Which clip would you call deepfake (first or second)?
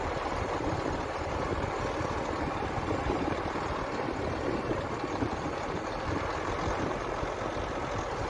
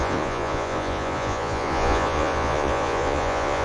second